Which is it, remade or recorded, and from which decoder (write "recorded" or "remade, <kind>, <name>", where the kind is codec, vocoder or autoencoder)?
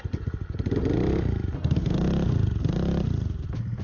recorded